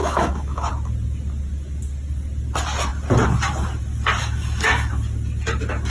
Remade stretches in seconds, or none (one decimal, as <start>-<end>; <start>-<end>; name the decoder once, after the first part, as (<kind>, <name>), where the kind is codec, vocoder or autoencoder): 0.0-0.7 (autoencoder, DAC-VAE); 4.2-4.9